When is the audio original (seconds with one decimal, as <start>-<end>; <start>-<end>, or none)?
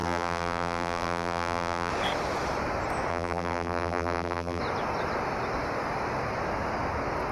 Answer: 1.9-3.1; 4.6-7.3